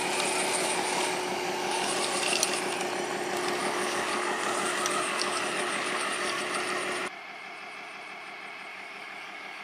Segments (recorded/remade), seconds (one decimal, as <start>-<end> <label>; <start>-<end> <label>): 0.0-0.6 recorded; 0.6-1.9 remade; 1.9-3.6 recorded; 3.6-6.4 remade; 6.4-8.7 recorded; 8.7-9.6 remade